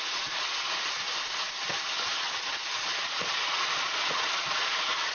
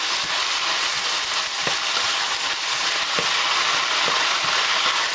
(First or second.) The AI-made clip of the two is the first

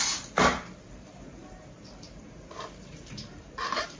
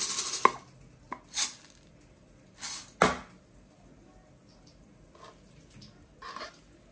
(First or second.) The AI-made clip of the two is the first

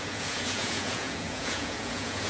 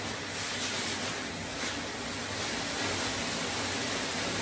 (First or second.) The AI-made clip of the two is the first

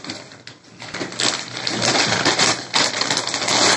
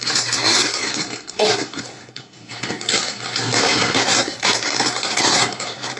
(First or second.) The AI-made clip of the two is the second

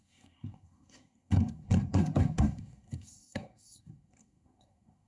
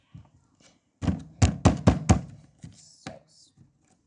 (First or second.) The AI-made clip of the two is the first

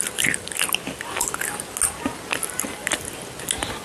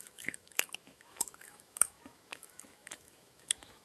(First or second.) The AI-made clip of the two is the second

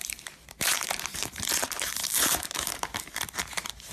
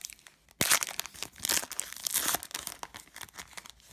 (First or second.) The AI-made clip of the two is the first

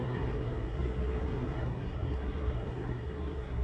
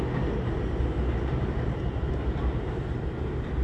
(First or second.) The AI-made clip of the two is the first